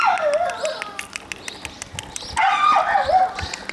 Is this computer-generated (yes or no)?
no